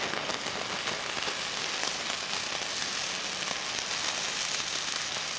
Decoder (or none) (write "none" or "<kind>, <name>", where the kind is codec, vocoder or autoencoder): none